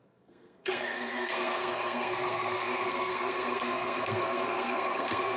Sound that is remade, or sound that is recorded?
remade